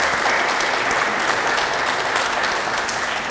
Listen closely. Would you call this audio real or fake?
real